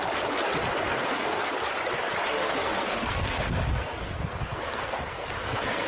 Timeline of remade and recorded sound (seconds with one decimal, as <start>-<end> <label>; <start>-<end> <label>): 0.0-0.9 recorded; 0.9-1.5 remade; 1.5-2.3 recorded; 2.3-5.9 remade